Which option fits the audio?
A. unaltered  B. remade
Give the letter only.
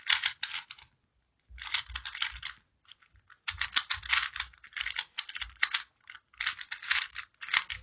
A